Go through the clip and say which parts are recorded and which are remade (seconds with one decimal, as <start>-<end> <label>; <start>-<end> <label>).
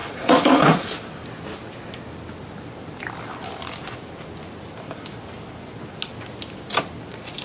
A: 0.0-0.9 remade; 0.9-7.4 recorded